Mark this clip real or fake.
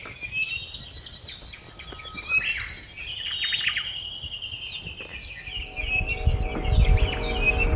real